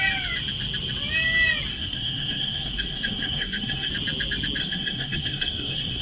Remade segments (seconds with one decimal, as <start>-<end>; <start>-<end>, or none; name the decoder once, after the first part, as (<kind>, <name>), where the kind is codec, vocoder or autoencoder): 1.7-3.9 (codec, SNAC); 4.6-6.0